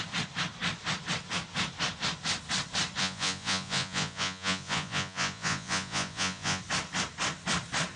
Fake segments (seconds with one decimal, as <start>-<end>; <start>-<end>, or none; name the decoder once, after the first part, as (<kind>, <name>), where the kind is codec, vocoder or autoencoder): 3.0-6.6 (vocoder, Vocos)